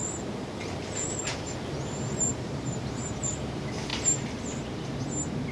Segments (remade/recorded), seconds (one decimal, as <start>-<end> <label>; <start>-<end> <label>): 0.0-1.5 remade; 1.5-2.3 recorded; 2.3-3.2 remade; 3.2-5.5 recorded